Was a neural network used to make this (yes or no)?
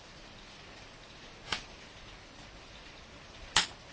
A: no